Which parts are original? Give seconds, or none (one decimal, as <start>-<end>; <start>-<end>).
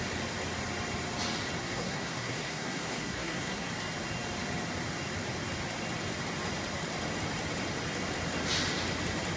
0.0-1.6; 3.7-9.4